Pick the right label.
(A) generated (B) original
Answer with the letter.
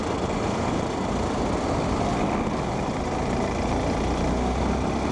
B